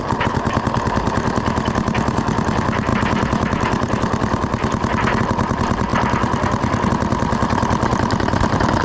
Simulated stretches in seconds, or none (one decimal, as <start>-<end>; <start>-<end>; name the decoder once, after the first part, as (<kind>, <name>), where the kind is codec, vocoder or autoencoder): none